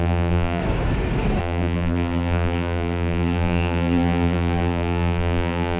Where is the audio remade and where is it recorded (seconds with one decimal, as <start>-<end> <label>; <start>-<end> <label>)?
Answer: 0.0-0.6 remade; 0.6-1.4 recorded; 1.4-5.8 remade